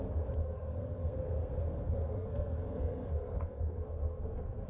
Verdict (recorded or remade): remade